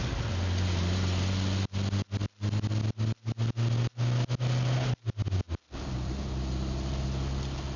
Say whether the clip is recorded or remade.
recorded